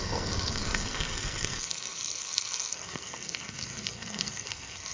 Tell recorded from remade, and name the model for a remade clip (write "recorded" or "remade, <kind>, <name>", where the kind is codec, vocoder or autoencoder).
remade, codec, SNAC